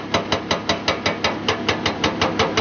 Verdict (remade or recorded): recorded